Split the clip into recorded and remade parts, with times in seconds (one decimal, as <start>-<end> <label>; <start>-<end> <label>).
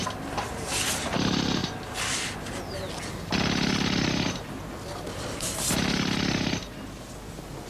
0.0-7.7 recorded